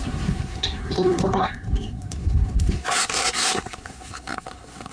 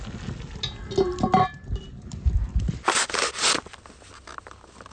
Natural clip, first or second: second